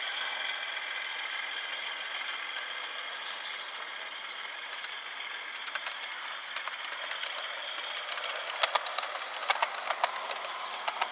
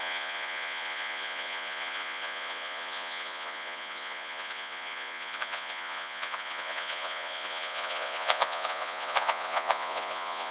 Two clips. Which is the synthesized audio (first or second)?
second